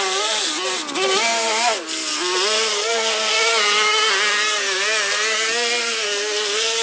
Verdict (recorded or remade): recorded